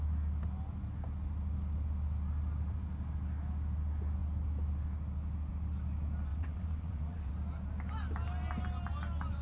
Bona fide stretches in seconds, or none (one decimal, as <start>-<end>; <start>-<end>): 0.0-6.3; 7.3-9.4